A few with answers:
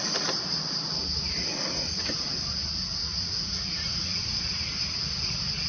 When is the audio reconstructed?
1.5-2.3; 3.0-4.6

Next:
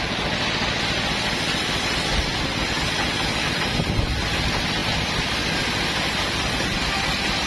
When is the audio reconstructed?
none

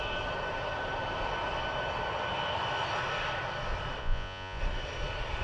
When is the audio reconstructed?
4.0-4.6

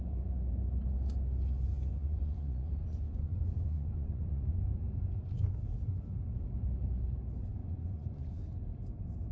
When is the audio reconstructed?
2.0-4.7; 7.6-8.3